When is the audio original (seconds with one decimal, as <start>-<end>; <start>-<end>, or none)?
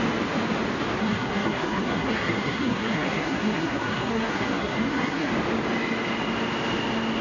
0.0-1.0; 5.3-7.2